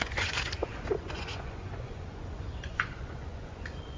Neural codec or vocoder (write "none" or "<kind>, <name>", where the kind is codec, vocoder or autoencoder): vocoder, Vocos